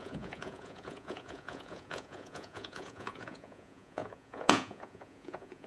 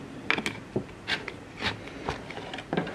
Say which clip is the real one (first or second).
second